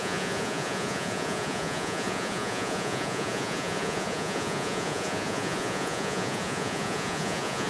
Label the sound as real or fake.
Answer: fake